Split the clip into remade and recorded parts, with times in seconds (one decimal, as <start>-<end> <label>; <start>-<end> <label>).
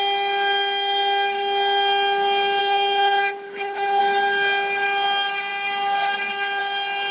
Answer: 0.0-2.6 recorded; 2.6-4.0 remade; 4.0-7.1 recorded